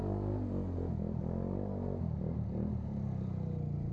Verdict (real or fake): real